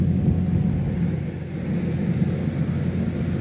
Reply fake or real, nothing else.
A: real